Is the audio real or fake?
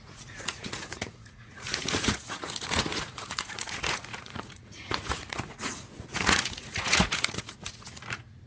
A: fake